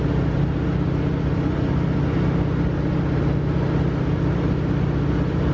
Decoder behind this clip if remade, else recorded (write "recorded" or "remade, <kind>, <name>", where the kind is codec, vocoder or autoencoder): recorded